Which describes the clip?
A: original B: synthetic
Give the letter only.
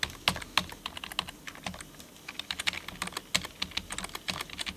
A